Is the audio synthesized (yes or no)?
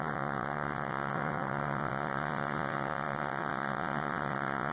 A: yes